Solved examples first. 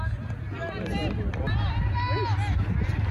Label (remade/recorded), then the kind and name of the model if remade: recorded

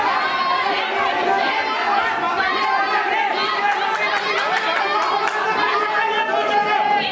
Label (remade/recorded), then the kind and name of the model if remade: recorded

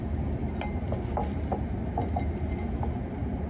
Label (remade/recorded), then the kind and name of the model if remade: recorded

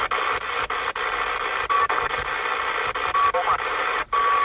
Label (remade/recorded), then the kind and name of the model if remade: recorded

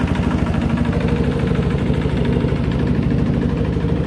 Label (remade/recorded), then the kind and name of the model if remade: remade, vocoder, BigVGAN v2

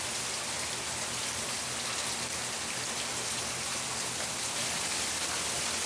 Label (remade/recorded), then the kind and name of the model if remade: remade, vocoder, BigVGAN v2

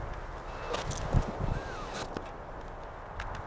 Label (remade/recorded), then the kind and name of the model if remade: recorded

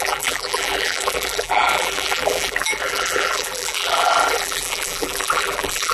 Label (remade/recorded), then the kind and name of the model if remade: remade, vocoder, BigVGAN v2